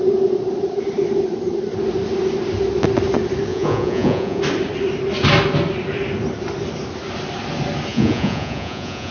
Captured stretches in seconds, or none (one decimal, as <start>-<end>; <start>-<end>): 0.0-3.5; 4.4-7.9